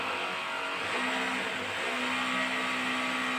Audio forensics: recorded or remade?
recorded